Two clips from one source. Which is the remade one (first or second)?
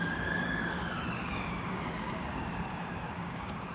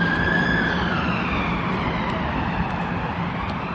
first